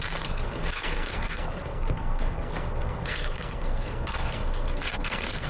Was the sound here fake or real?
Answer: fake